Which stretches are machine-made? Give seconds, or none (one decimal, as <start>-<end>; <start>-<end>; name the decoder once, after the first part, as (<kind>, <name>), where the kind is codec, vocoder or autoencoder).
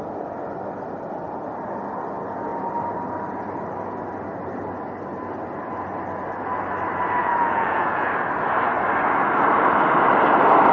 7.2-8.1 (vocoder, Vocos)